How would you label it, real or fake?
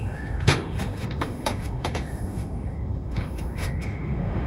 fake